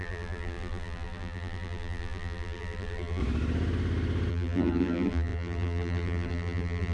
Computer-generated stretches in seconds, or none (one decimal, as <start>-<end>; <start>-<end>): 0.0-3.2; 4.3-6.9

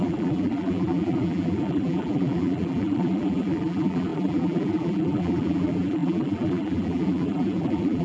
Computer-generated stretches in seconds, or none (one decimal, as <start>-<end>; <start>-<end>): 0.0-8.0

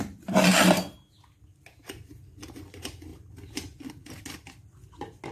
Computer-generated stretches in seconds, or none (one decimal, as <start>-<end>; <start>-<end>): none

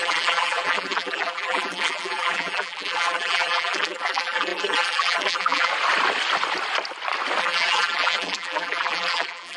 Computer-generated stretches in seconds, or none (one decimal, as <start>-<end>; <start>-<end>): 0.0-5.7; 7.4-9.6

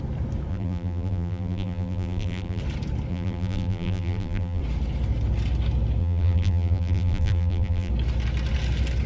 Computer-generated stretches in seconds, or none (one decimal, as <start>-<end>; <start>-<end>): 0.5-2.6; 3.1-4.6; 6.0-7.9

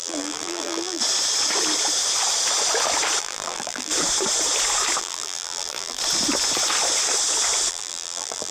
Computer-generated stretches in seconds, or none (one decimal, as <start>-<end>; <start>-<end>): 0.0-1.0; 3.2-3.9; 5.0-6.0; 7.7-8.5

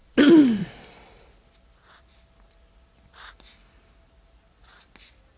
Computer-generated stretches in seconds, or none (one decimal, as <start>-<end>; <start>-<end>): none

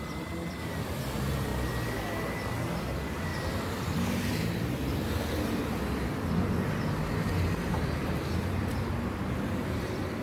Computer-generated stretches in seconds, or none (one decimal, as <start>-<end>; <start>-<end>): 0.0-1.5; 2.7-8.7; 9.6-10.2